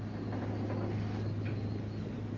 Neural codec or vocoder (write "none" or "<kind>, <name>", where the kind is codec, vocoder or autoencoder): none